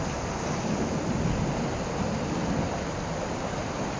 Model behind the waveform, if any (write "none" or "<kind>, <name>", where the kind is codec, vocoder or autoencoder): none